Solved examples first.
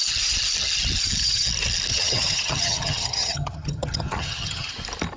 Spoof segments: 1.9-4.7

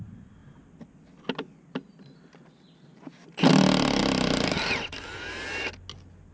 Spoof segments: none

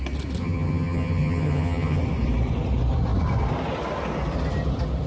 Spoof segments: 0.4-2.0

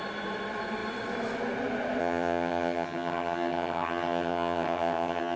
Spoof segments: 2.0-5.4

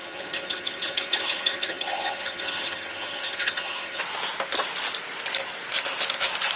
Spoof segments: 0.0-4.0

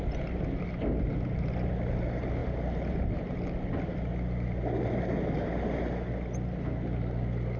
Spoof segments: none

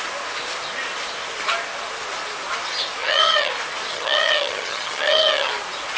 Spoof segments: 3.0-3.5; 3.9-5.5